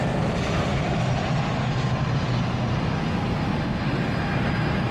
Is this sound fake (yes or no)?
no